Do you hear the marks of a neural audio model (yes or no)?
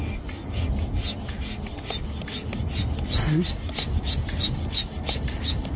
no